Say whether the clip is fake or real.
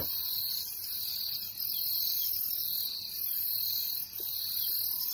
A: real